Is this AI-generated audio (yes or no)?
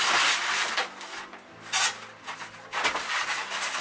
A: no